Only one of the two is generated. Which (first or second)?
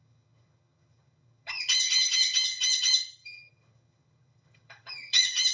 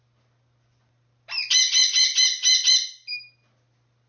first